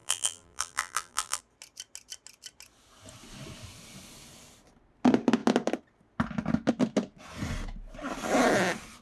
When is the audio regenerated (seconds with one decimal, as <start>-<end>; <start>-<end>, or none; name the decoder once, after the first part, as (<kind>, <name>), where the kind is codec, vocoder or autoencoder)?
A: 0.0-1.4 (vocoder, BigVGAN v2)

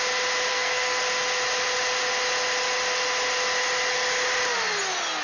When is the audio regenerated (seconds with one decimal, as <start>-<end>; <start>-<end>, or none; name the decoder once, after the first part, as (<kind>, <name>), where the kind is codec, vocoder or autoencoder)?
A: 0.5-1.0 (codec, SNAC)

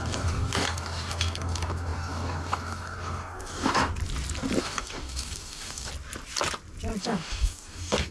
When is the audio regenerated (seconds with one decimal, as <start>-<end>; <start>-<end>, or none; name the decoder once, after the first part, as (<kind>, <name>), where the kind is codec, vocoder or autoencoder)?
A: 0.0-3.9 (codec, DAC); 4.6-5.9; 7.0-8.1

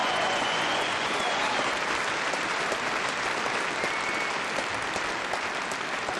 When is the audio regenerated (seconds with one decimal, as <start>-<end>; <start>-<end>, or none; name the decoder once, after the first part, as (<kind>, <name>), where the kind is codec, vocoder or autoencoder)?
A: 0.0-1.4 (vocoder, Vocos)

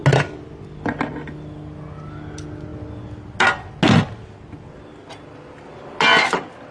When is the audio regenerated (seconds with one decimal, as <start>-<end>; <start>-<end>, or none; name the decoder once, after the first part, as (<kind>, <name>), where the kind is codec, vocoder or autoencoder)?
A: none